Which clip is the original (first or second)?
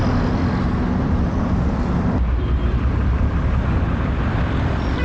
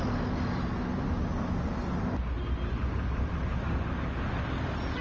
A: second